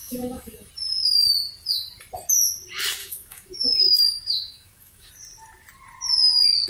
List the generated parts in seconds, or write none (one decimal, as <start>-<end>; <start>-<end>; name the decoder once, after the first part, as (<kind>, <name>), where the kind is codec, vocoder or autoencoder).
0.0-0.7 (autoencoder, DAC-VAE); 3.0-5.1